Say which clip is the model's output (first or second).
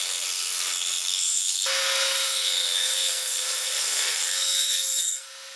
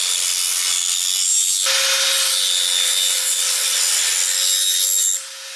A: first